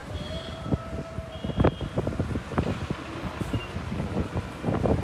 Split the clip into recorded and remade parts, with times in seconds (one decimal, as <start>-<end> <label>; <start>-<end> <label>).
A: 0.0-5.0 recorded